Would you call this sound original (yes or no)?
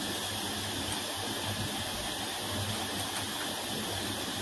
yes